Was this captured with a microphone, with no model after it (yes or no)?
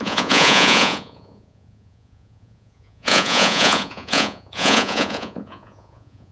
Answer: no